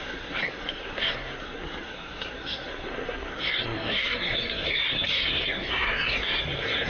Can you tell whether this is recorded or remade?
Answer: remade